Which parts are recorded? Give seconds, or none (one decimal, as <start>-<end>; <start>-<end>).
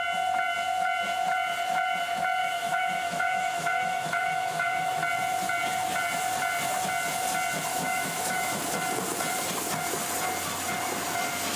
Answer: 0.0-2.4; 5.0-7.7; 8.6-11.6